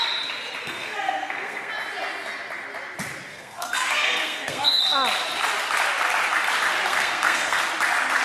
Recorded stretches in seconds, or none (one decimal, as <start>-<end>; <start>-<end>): 0.0-0.6; 1.7-3.3; 4.8-6.9; 7.6-8.2